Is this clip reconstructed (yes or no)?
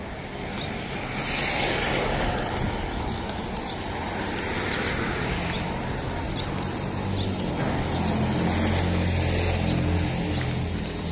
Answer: no